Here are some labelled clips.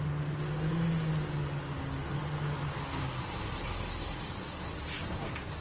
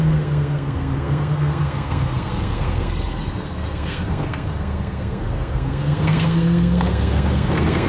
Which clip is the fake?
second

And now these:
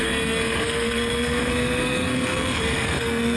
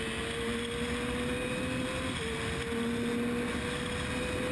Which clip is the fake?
first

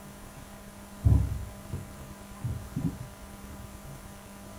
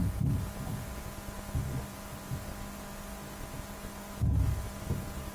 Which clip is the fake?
first